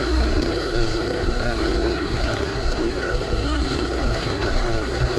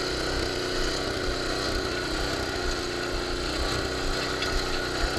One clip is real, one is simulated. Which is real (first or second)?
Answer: second